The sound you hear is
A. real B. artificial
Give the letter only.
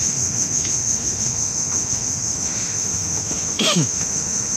B